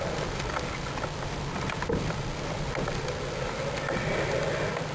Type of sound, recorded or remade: recorded